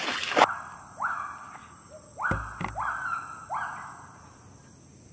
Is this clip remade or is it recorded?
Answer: recorded